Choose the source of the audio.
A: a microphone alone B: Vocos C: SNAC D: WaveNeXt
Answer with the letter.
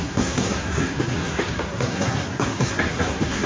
C